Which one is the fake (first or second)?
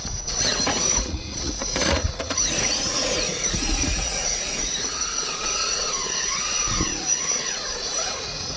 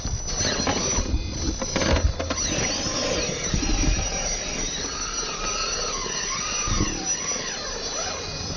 first